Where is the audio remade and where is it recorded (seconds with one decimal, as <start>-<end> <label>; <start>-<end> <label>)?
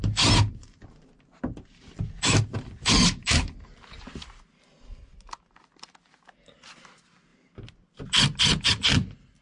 0.0-9.4 recorded